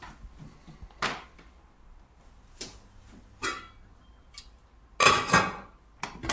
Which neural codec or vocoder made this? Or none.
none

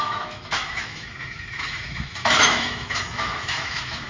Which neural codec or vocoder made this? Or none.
autoencoder, DAC-VAE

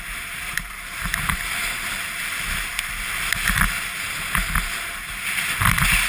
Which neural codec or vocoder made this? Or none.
none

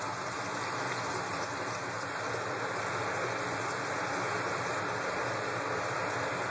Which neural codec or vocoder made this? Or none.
none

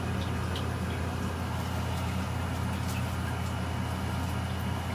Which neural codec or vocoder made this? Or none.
none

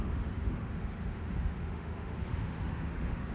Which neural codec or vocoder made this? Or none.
autoencoder, DAC-VAE